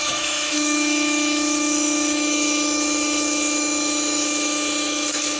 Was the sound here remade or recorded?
remade